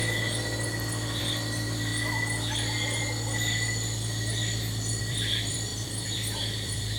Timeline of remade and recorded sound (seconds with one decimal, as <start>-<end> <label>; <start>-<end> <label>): 0.0-1.2 recorded; 1.2-1.9 remade; 1.9-5.0 recorded; 5.0-7.0 remade